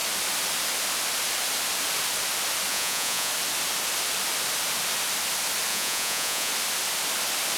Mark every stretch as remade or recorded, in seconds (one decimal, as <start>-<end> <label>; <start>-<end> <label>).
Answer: 0.0-2.7 recorded; 2.7-3.3 remade; 3.3-5.7 recorded; 5.7-6.5 remade; 6.5-7.6 recorded